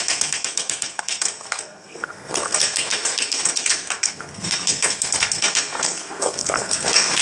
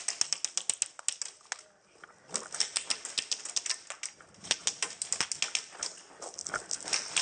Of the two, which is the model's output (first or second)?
first